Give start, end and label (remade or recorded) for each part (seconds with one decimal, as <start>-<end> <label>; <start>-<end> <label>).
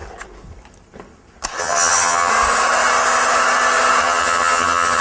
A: 0.0-1.6 recorded; 1.6-2.3 remade; 2.3-4.0 recorded; 4.0-5.0 remade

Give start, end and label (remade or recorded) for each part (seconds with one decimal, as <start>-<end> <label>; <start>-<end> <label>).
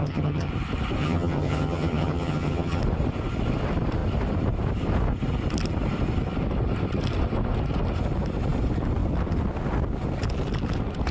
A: 0.0-0.5 remade; 0.5-1.0 recorded; 1.0-2.8 remade; 2.8-11.1 recorded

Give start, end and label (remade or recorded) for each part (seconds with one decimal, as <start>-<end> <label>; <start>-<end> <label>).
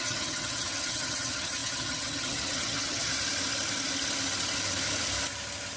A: 0.0-3.1 remade; 3.1-5.8 recorded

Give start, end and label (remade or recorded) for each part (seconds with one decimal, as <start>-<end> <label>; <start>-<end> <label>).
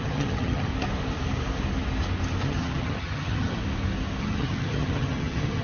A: 0.0-0.7 remade; 0.7-2.4 recorded; 2.4-3.6 remade; 3.6-4.2 recorded; 4.2-5.6 remade